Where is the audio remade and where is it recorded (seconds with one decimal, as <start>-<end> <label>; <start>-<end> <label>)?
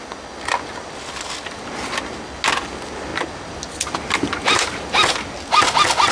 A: 0.0-6.1 recorded